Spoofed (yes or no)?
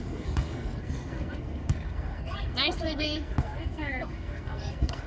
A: yes